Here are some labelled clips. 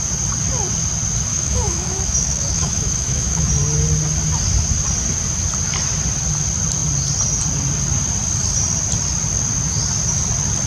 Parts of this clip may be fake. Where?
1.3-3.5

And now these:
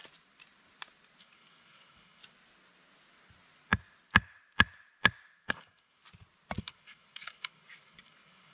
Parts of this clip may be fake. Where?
1.2-2.2; 5.5-6.0; 6.6-8.5

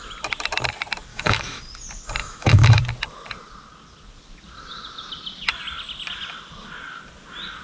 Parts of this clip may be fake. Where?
1.1-1.6; 2.2-2.8